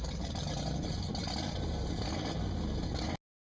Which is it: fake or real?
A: real